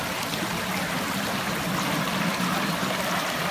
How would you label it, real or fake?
real